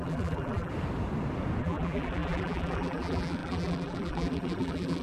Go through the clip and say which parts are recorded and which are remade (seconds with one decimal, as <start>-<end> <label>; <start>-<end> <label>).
0.0-0.7 remade; 0.7-1.6 recorded; 1.6-5.0 remade